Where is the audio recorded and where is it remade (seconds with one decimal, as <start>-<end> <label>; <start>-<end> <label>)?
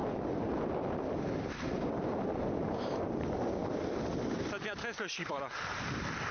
0.0-6.3 recorded